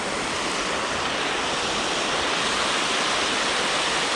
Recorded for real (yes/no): yes